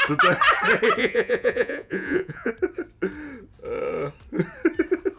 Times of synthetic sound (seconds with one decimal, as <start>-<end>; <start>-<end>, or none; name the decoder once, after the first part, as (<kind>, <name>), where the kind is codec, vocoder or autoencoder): 1.0-2.5 (vocoder, Vocos)